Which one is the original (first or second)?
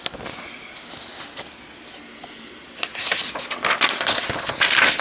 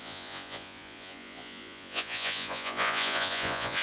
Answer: first